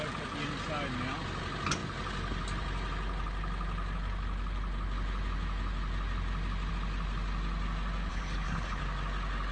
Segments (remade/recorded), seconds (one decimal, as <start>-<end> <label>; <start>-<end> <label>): 0.0-8.1 recorded; 8.1-8.8 remade; 8.8-9.5 recorded